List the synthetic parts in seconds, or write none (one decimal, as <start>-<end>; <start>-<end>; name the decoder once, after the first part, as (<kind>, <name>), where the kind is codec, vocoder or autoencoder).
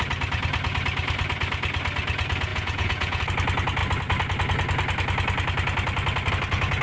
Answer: 2.5-3.2 (vocoder, Vocos)